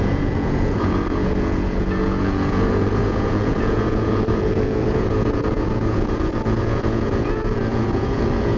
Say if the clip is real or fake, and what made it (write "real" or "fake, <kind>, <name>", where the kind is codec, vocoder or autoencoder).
fake, vocoder, Vocos